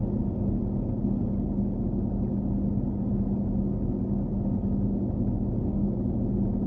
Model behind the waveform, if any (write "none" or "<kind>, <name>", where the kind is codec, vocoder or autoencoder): none